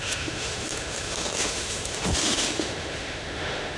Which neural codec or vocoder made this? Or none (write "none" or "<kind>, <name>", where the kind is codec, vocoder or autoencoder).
autoencoder, DAC-VAE